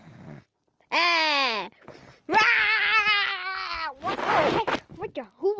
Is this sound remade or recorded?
recorded